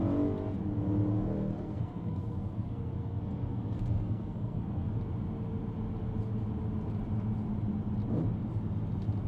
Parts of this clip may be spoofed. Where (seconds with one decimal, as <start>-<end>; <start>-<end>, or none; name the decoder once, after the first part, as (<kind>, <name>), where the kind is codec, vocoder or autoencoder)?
1.1-5.0 (codec, SNAC)